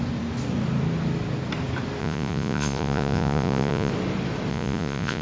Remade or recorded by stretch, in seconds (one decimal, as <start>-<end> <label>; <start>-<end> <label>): 0.0-2.0 recorded; 2.0-3.9 remade; 3.9-4.5 recorded; 4.5-5.2 remade